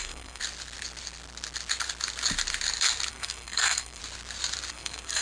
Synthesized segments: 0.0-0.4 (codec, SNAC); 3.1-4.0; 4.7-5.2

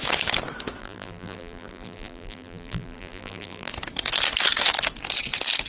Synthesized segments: 0.8-3.7 (vocoder, BigVGAN v2)

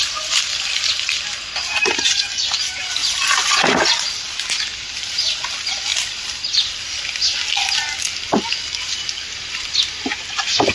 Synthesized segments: none

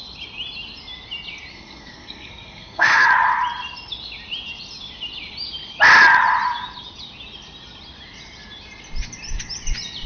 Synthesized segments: 1.5-3.1 (codec, SNAC)

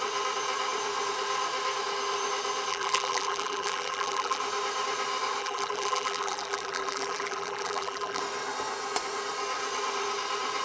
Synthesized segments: 2.7-4.4 (vocoder, BigVGAN v2); 5.4-8.2

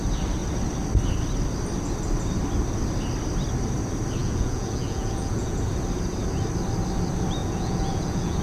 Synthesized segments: 4.2-5.7 (vocoder, Vocos); 7.4-8.4